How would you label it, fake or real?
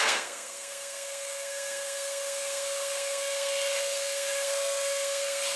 fake